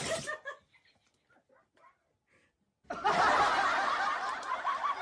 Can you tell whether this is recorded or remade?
recorded